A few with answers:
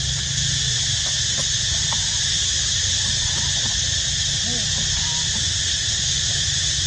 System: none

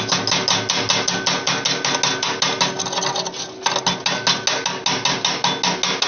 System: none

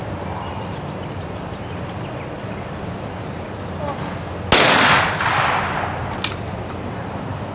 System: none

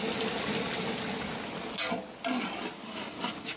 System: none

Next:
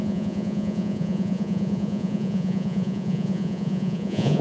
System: vocoder, Vocos